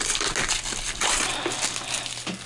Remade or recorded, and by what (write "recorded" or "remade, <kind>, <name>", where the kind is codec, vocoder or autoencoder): recorded